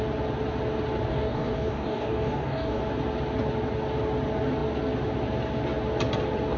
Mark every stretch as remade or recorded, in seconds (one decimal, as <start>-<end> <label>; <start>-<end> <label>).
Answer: 0.0-1.1 recorded; 1.1-2.8 remade; 2.8-6.6 recorded